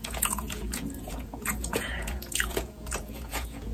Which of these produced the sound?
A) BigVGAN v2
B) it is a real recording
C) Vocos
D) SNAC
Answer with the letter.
C